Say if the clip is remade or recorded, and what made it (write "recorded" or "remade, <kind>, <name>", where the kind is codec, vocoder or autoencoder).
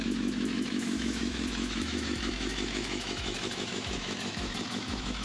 remade, autoencoder, DAC-VAE